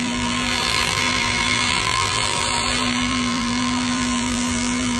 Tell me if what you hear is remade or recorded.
remade